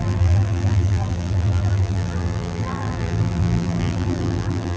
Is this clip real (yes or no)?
no